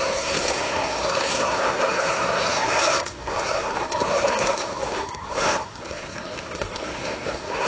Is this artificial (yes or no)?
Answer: yes